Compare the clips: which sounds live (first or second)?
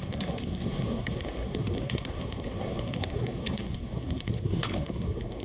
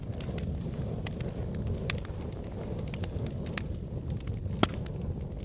second